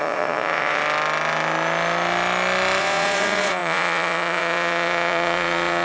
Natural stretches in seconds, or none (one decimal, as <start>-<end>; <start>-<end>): 0.8-2.8